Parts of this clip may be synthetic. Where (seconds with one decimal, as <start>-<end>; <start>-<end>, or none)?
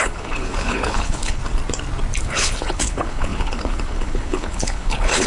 0.0-1.4; 2.2-5.3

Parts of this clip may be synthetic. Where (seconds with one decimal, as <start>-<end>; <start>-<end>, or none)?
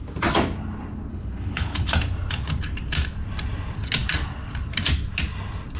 1.1-1.9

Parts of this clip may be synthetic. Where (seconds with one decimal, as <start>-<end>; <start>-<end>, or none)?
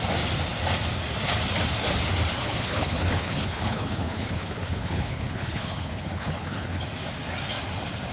2.4-6.8